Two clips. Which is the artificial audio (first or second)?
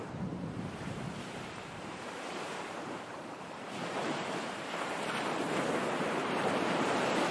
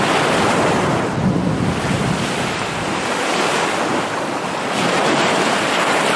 first